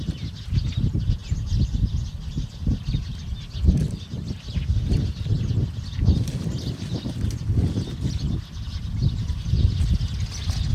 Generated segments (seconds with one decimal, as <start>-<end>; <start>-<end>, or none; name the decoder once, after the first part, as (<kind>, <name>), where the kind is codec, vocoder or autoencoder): none